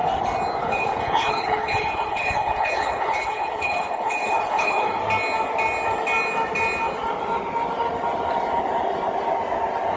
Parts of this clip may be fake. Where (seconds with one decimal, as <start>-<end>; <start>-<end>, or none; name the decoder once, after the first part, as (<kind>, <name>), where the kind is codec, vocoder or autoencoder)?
0.6-5.0 (codec, HILCodec)